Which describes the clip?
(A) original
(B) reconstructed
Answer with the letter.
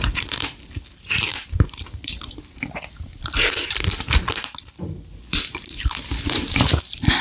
B